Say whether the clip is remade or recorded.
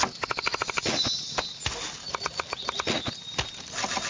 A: recorded